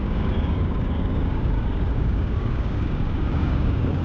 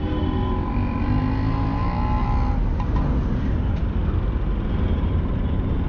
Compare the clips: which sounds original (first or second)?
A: second